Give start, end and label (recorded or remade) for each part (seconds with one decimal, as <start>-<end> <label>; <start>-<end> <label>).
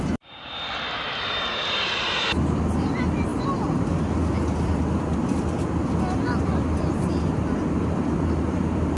0.0-9.0 remade